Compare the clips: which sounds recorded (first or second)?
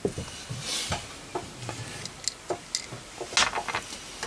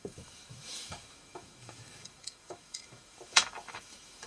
first